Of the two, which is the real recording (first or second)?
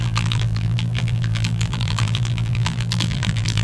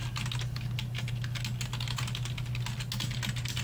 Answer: second